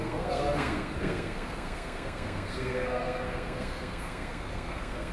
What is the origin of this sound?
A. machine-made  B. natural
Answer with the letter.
A